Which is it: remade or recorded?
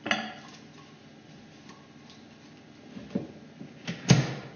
recorded